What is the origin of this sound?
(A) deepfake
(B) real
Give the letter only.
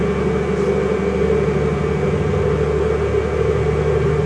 B